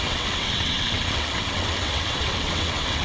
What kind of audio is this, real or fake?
fake